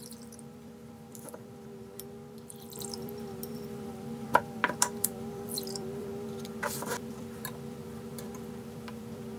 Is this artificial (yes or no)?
yes